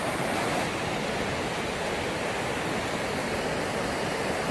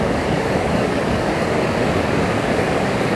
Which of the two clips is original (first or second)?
first